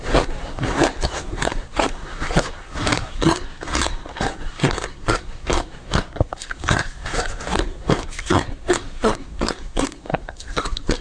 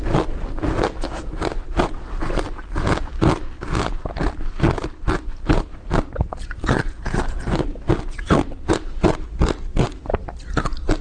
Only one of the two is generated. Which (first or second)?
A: first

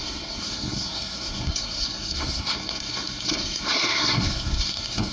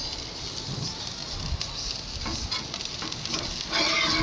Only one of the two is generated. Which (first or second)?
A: first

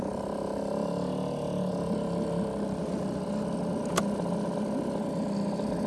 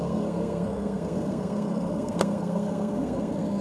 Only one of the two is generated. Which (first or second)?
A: second